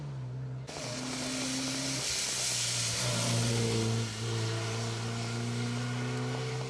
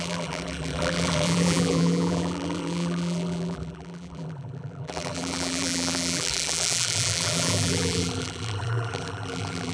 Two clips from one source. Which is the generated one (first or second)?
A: second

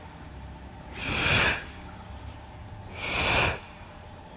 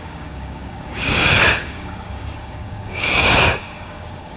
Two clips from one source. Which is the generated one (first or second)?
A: second